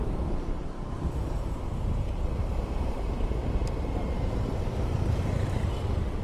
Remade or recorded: remade